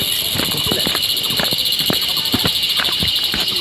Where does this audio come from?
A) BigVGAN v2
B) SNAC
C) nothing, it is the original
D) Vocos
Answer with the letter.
C